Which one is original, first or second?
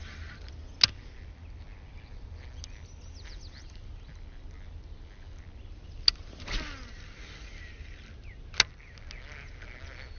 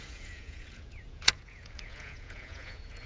first